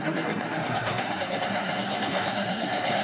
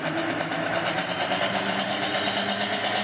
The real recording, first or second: second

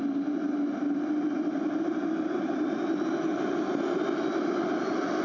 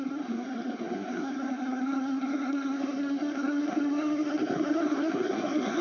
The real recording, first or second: first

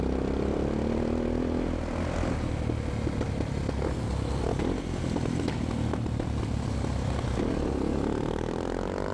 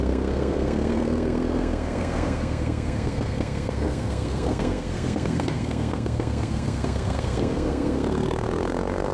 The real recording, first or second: first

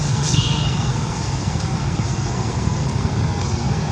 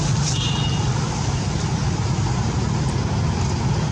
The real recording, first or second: second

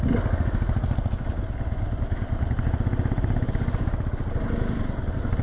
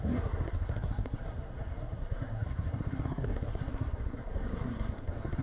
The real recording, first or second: first